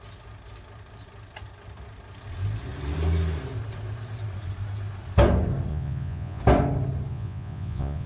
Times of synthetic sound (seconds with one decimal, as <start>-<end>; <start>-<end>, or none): 5.7-6.4; 7.1-8.1

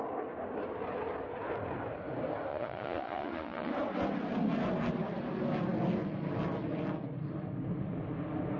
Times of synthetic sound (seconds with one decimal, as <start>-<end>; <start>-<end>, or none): 2.5-3.7

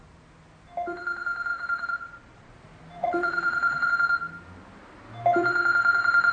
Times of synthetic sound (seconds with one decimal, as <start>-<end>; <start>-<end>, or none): 1.5-2.5; 3.0-3.9

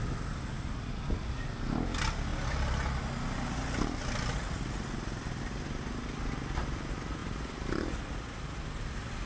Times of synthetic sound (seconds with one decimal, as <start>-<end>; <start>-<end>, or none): none

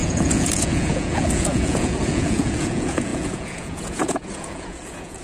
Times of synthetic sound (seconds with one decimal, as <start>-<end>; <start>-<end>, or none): 0.0-5.2